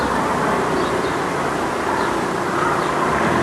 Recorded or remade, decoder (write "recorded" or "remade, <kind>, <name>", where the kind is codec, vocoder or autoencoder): recorded